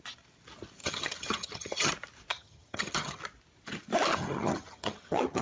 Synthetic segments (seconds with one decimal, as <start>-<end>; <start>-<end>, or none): 0.8-1.9; 2.3-3.2; 4.1-5.4